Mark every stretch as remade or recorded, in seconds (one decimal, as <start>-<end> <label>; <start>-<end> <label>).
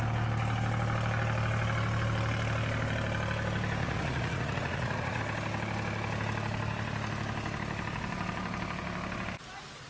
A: 0.0-3.8 recorded; 3.8-5.2 remade; 5.2-9.9 recorded